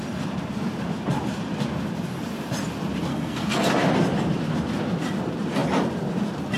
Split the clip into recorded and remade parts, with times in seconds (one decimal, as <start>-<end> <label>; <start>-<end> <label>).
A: 0.0-3.1 recorded; 3.1-3.7 remade; 3.7-6.6 recorded